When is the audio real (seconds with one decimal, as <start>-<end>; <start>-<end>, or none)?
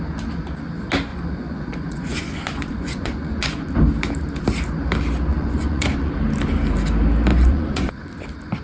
0.0-1.1; 3.7-5.3; 6.1-7.3; 8.1-8.6